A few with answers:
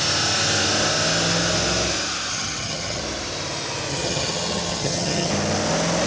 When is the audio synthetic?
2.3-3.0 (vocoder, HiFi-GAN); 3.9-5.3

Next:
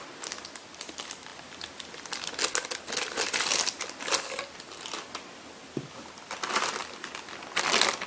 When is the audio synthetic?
none